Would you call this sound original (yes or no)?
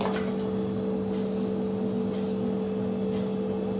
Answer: yes